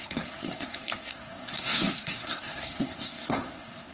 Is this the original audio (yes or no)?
no